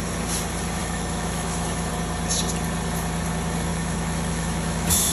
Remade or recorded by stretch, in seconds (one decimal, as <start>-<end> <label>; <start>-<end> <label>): 0.0-0.8 recorded; 0.8-1.9 remade; 1.9-3.7 recorded; 3.7-5.1 remade